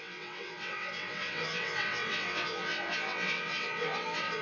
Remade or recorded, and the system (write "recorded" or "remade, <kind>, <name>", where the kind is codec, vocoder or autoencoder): remade, vocoder, WaveNeXt